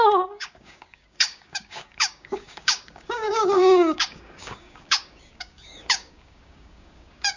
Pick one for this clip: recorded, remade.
remade